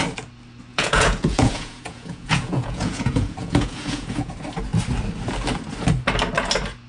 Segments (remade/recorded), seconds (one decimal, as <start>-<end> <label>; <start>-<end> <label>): 0.0-0.7 recorded; 0.7-4.3 remade; 4.3-6.9 recorded